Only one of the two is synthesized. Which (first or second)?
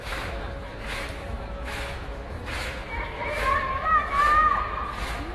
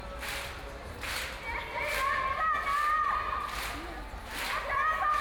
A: first